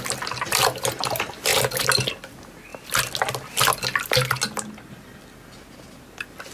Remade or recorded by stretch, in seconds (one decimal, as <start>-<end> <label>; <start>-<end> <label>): 0.0-6.5 recorded